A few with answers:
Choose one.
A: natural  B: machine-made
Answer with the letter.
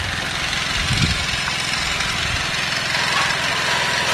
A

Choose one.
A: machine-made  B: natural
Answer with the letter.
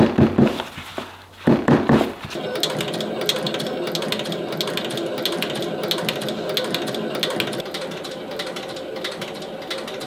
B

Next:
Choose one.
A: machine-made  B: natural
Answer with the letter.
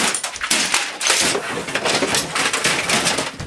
B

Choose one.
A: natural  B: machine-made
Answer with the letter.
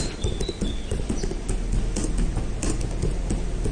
A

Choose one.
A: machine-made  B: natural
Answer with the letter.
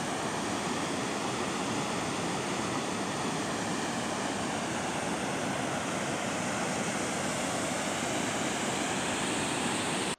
B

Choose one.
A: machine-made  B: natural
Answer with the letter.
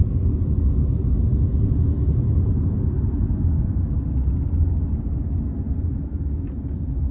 B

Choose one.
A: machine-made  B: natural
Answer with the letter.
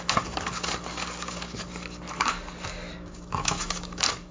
A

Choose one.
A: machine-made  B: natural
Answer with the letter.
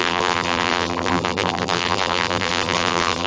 A